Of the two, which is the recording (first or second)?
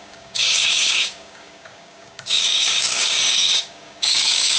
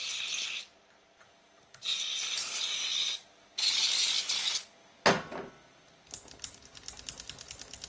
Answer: second